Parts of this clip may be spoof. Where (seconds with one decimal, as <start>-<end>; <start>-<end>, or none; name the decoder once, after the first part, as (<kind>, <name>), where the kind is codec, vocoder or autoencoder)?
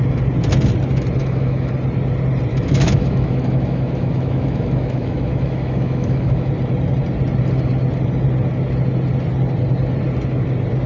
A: 1.2-1.7 (autoencoder, DAC-VAE); 2.5-6.5